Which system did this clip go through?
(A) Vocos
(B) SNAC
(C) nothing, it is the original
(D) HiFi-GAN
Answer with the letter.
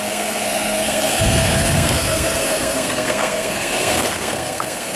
B